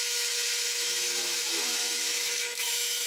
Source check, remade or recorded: remade